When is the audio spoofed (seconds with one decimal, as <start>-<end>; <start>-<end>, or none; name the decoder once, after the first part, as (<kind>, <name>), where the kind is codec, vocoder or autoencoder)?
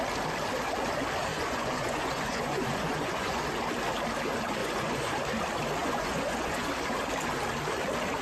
1.3-3.4 (vocoder, Vocos); 4.6-5.1; 5.8-6.7